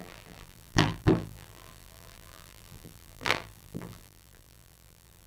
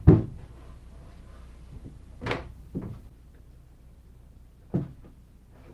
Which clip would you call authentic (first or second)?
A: second